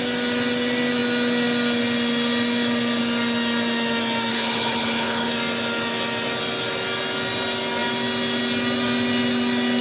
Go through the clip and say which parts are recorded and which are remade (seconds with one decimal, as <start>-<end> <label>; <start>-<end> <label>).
0.0-4.3 recorded; 4.3-5.3 remade; 5.3-9.8 recorded